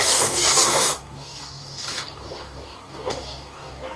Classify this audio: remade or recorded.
remade